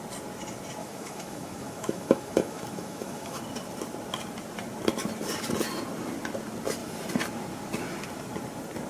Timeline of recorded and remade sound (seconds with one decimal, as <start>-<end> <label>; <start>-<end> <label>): 0.0-0.8 recorded; 0.8-3.4 remade; 3.4-8.9 recorded